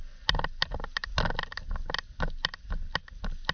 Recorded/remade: recorded